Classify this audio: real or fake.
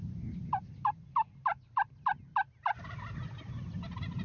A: real